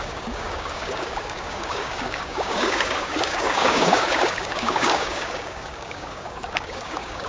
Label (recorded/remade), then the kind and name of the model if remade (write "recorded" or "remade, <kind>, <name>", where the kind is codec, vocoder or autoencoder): remade, codec, DAC